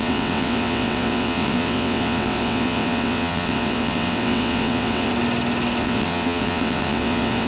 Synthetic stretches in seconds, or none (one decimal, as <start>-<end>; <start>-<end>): 0.0-5.1; 5.8-7.5